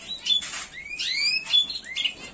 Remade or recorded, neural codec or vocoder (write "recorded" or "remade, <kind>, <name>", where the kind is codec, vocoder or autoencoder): recorded